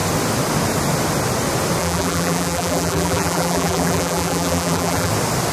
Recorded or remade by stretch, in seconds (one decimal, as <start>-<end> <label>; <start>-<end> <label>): 0.0-1.8 recorded; 1.8-5.1 remade; 5.1-5.5 recorded